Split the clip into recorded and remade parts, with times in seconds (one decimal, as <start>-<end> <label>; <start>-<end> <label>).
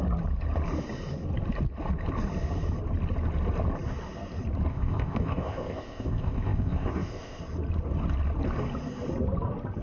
0.0-4.7 recorded; 4.7-7.4 remade; 7.4-9.8 recorded